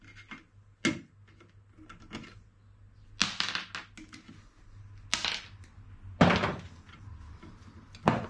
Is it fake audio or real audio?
real